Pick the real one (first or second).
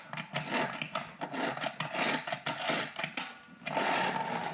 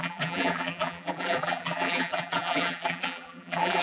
first